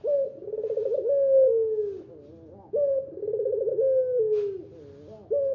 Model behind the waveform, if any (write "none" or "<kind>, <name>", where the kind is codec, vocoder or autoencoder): none